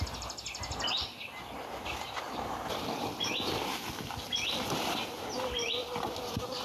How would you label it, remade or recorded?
recorded